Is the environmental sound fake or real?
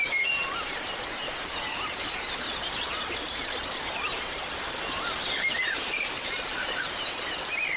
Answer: fake